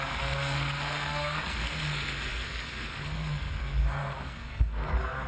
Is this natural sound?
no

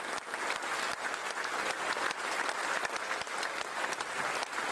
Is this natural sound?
yes